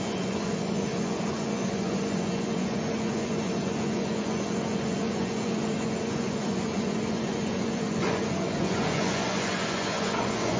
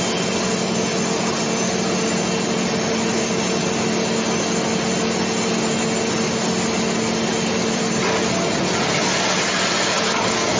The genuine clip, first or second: second